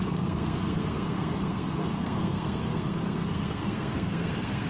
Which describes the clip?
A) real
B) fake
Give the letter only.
B